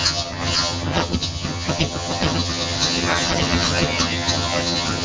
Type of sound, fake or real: fake